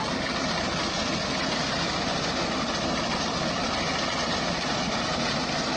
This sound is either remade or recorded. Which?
recorded